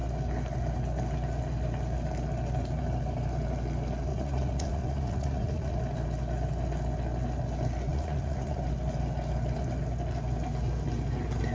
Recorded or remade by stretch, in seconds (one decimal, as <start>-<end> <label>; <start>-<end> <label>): 0.0-4.1 recorded; 4.1-5.8 remade; 5.8-7.9 recorded; 7.9-8.6 remade; 8.6-11.5 recorded